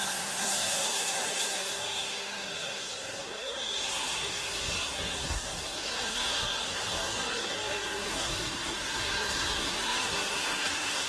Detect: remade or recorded remade